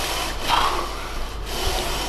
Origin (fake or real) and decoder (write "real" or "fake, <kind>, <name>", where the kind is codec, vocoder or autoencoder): real